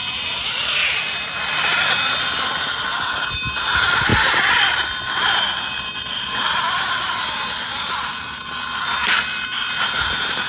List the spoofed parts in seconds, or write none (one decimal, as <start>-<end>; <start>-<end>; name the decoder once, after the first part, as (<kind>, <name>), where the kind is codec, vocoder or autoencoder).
6.1-7.2 (vocoder, BigVGAN v2)